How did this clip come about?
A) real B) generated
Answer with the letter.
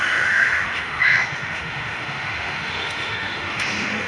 B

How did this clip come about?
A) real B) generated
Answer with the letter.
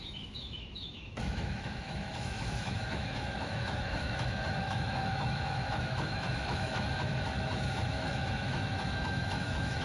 B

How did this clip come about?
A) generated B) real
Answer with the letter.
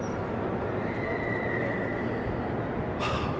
B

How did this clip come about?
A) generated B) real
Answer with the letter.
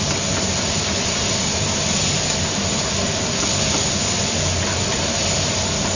B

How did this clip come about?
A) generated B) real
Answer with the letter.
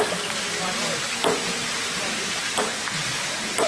B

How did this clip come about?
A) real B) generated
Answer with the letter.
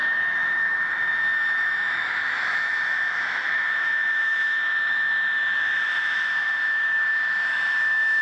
B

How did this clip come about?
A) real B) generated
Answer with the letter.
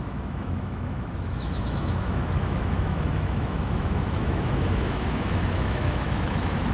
B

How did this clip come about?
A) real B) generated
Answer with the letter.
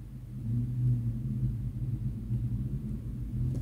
A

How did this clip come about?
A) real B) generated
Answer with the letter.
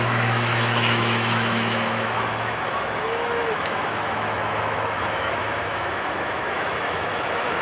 B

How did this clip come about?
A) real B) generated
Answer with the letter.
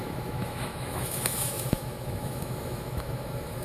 B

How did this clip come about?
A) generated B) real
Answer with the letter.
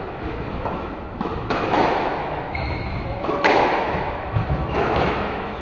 A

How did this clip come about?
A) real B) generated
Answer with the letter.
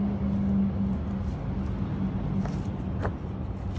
A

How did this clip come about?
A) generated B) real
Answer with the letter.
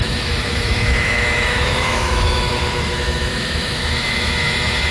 A